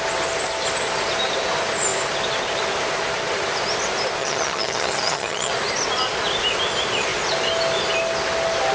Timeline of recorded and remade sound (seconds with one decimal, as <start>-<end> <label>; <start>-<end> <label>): 0.0-4.2 recorded; 4.2-5.5 remade; 5.5-8.7 recorded